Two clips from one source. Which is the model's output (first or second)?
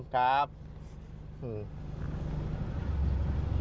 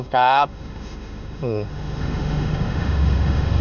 second